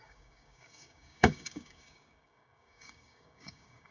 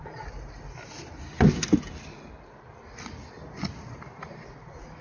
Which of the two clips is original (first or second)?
second